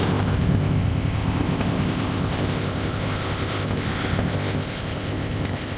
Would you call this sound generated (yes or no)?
yes